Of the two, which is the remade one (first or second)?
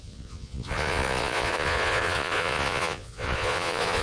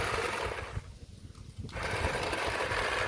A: first